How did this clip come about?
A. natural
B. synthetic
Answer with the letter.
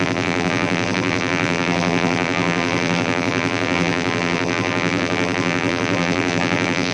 B